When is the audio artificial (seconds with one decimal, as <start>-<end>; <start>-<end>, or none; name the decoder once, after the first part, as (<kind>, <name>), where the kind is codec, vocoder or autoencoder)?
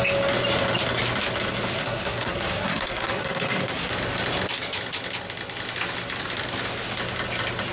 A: 1.8-3.9 (codec, SNAC)